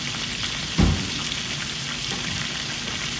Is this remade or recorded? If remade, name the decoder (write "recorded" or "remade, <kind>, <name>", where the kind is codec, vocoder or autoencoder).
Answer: recorded